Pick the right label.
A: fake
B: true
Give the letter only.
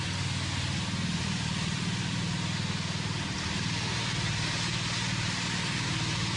B